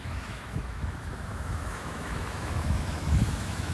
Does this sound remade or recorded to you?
remade